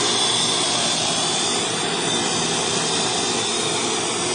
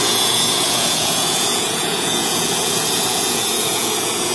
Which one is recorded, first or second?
first